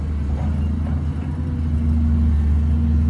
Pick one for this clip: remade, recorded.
recorded